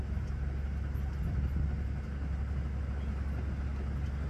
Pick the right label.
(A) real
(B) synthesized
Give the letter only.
A